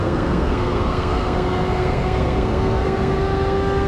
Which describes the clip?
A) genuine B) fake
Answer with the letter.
B